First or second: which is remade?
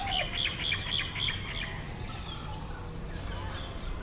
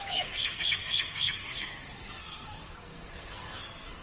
second